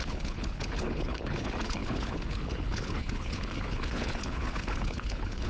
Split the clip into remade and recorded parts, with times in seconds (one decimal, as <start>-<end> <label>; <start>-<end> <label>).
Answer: 0.0-5.5 remade